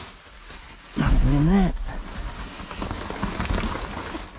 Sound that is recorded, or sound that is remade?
recorded